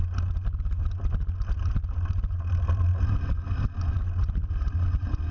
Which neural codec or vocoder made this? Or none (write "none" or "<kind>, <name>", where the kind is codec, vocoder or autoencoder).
none